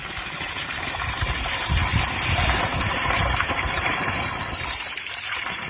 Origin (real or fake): fake